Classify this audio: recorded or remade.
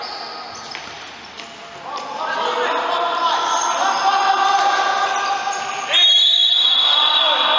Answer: recorded